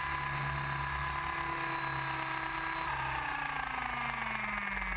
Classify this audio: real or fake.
real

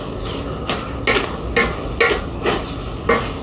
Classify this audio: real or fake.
real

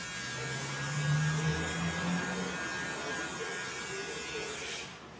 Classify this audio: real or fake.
real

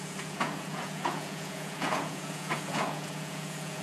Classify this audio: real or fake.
fake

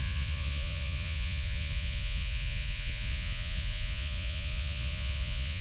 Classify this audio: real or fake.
fake